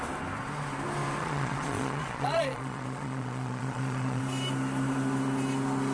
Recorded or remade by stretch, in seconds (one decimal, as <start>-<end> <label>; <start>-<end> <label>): 0.0-1.2 recorded; 1.2-4.2 remade; 4.2-5.9 recorded